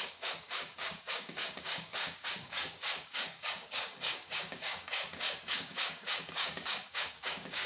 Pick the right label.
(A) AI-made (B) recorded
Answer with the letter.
A